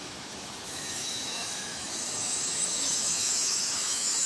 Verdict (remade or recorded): remade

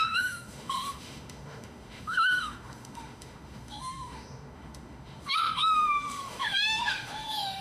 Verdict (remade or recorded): remade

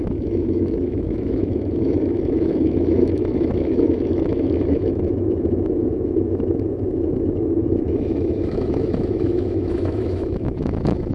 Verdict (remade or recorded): remade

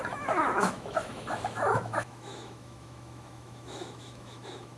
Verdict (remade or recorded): remade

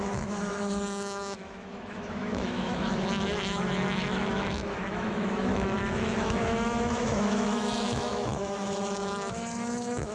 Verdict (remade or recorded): remade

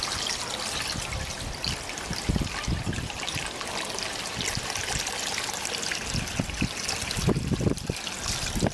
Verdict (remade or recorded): recorded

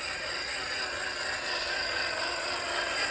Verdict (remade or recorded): recorded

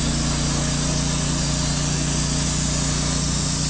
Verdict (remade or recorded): recorded